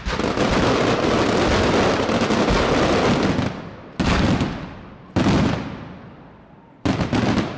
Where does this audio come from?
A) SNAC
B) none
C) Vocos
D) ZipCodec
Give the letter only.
B